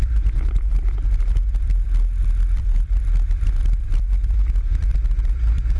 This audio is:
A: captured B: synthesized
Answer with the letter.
B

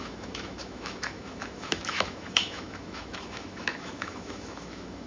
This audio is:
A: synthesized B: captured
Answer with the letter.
A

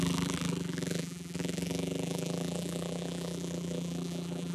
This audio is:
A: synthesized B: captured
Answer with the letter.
A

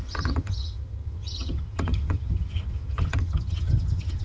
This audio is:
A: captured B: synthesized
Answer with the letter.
B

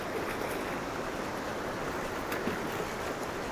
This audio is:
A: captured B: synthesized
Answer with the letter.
A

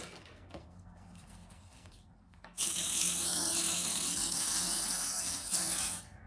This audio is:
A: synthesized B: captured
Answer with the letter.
A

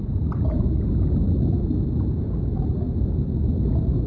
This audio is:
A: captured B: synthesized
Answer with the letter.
A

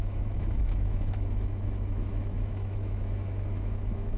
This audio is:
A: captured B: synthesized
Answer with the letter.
B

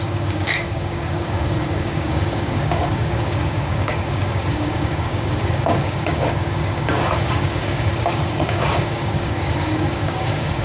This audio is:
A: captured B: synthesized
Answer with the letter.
B